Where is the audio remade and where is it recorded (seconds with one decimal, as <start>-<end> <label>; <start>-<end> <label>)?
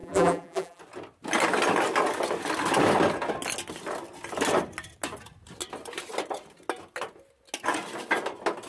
0.0-0.8 remade; 0.8-8.7 recorded